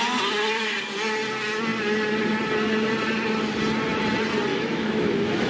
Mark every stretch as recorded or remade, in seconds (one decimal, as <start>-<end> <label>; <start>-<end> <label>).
0.0-4.5 recorded; 4.5-5.5 remade